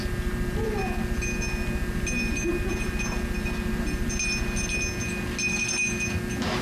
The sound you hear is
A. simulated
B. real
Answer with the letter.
B